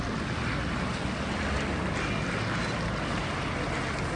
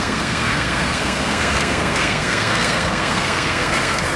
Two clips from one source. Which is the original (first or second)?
first